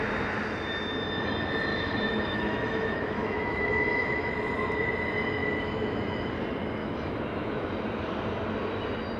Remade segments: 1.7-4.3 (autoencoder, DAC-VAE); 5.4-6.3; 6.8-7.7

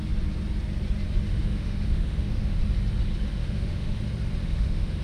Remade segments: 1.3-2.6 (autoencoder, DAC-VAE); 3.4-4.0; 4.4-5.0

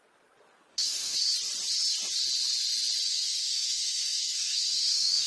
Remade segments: 0.7-1.3 (autoencoder, DAC-VAE); 3.1-5.3

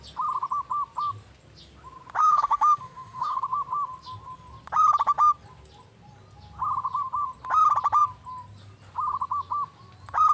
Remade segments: 2.2-3.4 (autoencoder, DAC-VAE)

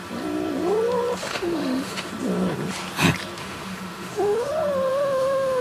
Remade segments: 1.2-2.1 (autoencoder, DAC-VAE); 3.4-4.5; 4.9-5.6

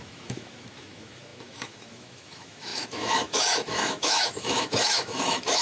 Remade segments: 0.0-5.6 (autoencoder, DAC-VAE)